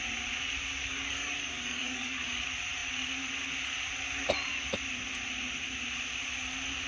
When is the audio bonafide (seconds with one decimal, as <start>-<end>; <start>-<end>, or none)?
0.0-0.8; 2.4-6.9